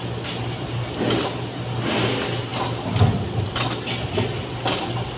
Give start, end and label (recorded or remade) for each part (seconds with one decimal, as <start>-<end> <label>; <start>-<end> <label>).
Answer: 0.0-5.2 recorded